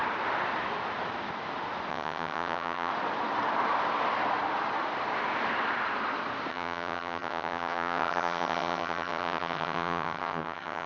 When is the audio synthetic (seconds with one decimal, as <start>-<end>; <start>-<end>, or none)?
1.9-2.9; 6.5-10.9